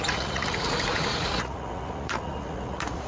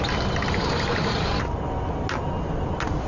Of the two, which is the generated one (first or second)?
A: first